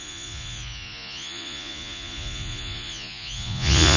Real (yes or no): no